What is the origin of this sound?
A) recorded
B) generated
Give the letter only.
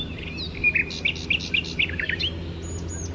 A